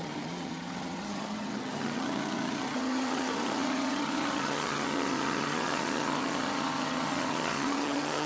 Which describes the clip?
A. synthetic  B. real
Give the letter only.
A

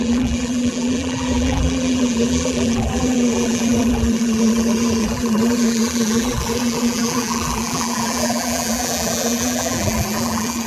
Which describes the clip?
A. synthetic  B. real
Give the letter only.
A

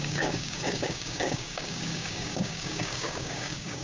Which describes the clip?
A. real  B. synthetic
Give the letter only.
B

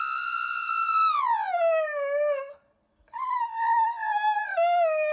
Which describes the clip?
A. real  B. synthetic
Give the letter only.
A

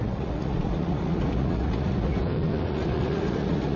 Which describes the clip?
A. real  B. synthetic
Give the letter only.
B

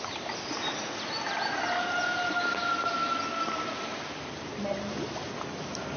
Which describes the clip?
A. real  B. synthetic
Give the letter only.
A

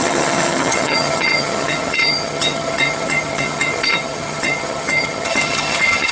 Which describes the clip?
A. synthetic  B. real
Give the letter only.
A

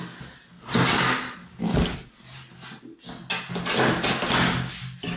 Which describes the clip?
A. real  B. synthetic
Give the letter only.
A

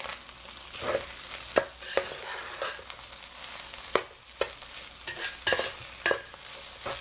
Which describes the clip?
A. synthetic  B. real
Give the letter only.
B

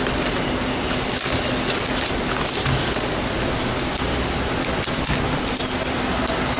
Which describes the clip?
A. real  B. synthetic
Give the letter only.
A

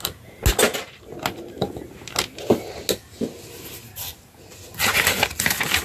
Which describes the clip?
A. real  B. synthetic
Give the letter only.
A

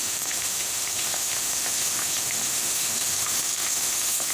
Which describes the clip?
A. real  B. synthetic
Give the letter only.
B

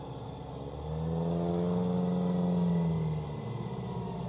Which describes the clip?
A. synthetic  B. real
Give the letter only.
B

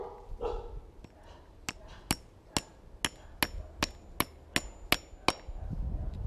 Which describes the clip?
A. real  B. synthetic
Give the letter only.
A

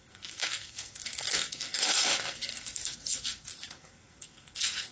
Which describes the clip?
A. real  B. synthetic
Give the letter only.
B